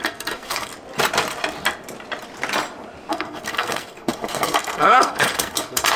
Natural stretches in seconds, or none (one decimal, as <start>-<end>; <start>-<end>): 0.7-3.1